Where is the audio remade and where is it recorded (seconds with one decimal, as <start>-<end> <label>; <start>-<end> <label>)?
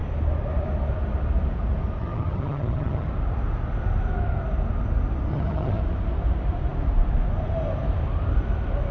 0.0-2.0 recorded; 2.0-3.1 remade; 3.1-5.3 recorded; 5.3-5.8 remade; 5.8-8.9 recorded